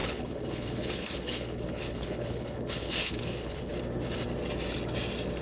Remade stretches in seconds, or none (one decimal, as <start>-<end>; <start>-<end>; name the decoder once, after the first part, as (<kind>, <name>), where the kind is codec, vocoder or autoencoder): 0.0-3.7 (codec, HILCodec)